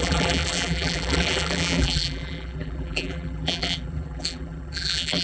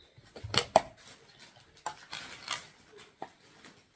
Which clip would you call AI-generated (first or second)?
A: first